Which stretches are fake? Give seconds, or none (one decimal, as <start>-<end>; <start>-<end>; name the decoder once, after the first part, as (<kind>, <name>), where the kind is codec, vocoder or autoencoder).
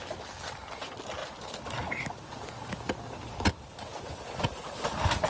none